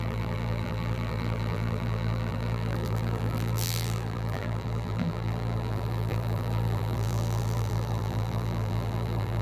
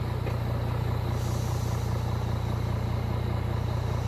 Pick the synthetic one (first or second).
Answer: first